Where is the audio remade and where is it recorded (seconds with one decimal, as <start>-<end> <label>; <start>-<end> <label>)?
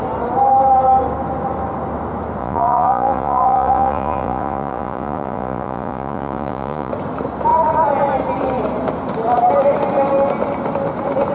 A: 0.0-2.4 recorded; 2.4-6.9 remade; 6.9-11.3 recorded